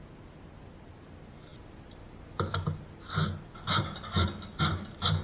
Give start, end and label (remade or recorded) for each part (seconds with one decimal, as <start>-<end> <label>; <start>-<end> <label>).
0.0-5.2 recorded